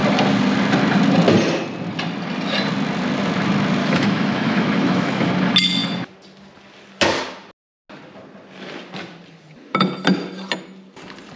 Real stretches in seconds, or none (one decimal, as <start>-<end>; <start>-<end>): 0.0-3.8; 5.3-11.4